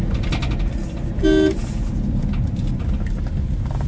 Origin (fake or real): real